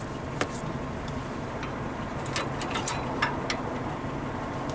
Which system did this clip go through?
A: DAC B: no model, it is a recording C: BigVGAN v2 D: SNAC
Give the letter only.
B